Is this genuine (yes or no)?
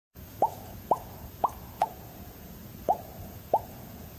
no